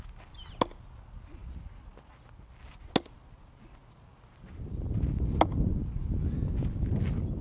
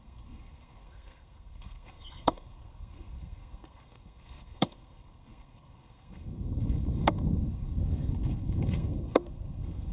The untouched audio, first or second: first